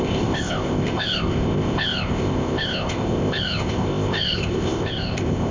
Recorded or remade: remade